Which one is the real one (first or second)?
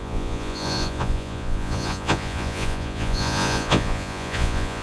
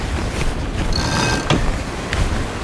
second